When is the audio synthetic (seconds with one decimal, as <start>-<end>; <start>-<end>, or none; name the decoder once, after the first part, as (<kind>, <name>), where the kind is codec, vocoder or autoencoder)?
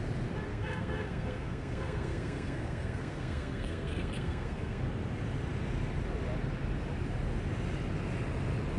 0.5-4.8 (codec, SNAC)